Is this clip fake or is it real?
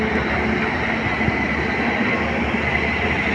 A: real